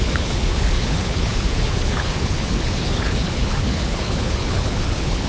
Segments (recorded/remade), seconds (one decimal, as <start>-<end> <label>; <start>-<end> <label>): 0.0-5.3 remade